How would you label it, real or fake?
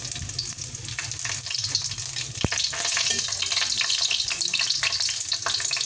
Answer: real